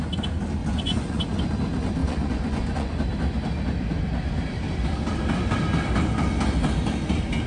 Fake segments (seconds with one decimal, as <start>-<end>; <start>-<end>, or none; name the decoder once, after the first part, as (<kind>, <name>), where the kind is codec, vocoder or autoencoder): 0.6-1.2 (vocoder, Vocos); 2.0-3.0